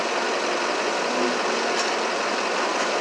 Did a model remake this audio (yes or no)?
no